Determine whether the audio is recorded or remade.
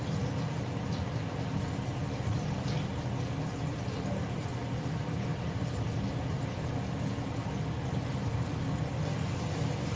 recorded